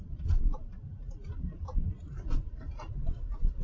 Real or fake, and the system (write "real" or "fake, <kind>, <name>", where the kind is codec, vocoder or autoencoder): real